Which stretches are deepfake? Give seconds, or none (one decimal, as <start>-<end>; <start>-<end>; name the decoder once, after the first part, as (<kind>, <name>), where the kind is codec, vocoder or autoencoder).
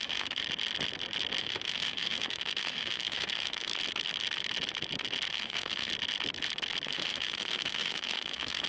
0.0-0.4 (autoencoder, DAC-VAE); 1.4-3.7; 5.3-5.9; 6.9-8.7